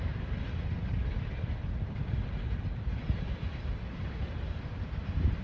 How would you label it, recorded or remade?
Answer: remade